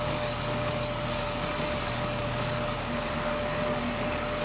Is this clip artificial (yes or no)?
yes